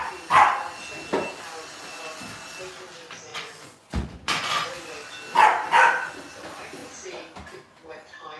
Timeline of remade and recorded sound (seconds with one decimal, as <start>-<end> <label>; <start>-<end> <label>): 0.0-3.3 recorded; 3.3-4.9 remade; 4.9-8.4 recorded